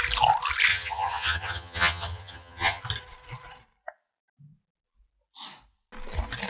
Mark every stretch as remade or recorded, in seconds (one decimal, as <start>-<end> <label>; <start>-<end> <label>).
0.0-0.7 recorded; 0.7-2.8 remade; 2.8-6.5 recorded